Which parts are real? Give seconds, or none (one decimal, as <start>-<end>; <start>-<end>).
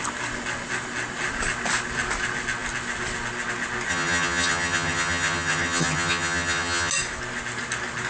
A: 0.0-3.9; 6.9-8.1